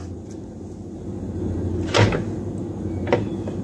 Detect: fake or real real